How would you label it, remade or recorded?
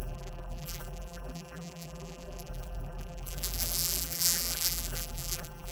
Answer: remade